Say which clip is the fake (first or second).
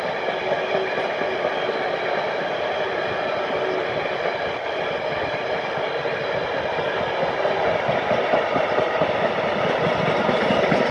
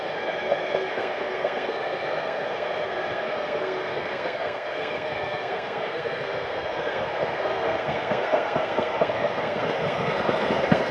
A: second